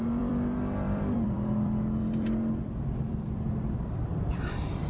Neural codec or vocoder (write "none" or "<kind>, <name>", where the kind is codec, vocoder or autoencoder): vocoder, BigVGAN v2